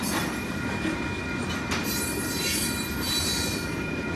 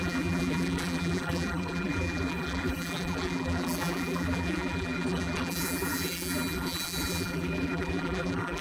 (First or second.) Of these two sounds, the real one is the first